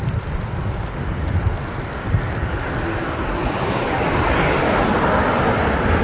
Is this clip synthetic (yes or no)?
no